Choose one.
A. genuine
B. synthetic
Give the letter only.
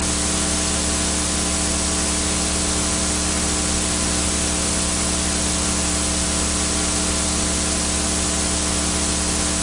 A